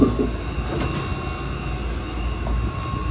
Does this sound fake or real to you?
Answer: real